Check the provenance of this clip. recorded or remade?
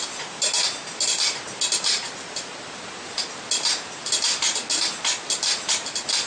recorded